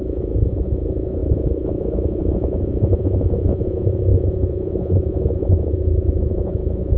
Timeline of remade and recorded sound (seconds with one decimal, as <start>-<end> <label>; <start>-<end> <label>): 0.0-7.0 remade